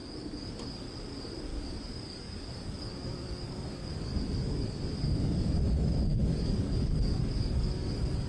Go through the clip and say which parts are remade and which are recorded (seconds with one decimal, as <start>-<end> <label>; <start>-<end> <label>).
0.0-0.5 remade; 0.5-1.5 recorded; 1.5-5.6 remade; 5.6-6.1 recorded; 6.1-8.3 remade